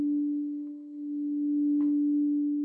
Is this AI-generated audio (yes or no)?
yes